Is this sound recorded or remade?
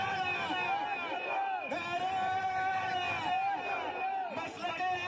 recorded